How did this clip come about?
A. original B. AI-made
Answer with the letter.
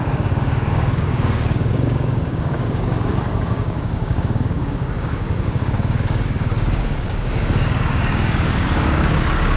B